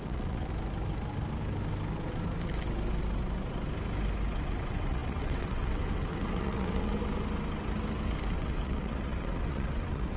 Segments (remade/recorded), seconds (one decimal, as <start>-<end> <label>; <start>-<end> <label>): 0.0-0.5 remade; 0.5-4.3 recorded; 4.3-6.9 remade; 6.9-8.3 recorded; 8.3-10.2 remade